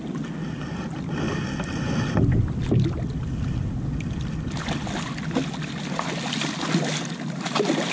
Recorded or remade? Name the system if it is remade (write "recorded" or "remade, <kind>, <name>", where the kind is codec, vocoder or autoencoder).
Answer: recorded